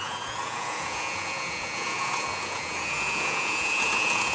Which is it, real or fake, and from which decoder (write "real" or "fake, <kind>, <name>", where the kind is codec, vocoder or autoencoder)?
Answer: fake, vocoder, Vocos